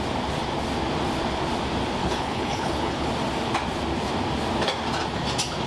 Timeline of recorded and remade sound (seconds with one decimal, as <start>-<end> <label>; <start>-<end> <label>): 0.0-2.0 recorded; 2.0-3.1 remade; 3.1-5.7 recorded